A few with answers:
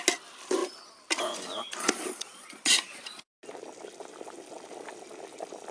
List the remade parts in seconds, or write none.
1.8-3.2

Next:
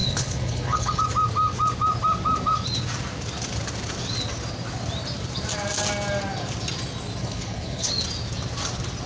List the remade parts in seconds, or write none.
0.0-1.0; 7.2-7.9

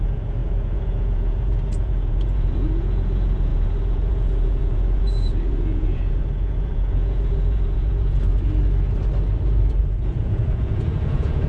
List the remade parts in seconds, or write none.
0.0-8.3; 9.8-11.5

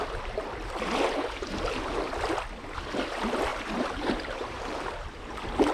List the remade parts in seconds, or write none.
0.0-0.9; 3.5-5.2

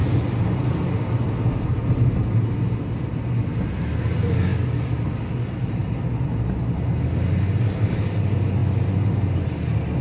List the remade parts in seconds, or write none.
none